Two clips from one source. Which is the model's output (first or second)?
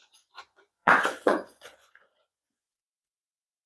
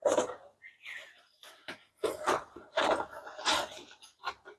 first